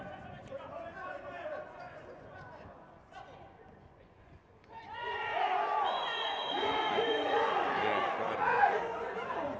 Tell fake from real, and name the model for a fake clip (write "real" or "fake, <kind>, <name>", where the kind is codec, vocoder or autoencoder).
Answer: fake, vocoder, Vocos